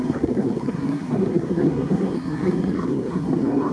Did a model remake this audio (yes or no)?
yes